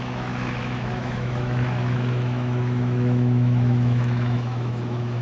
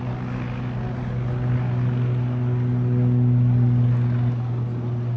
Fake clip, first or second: first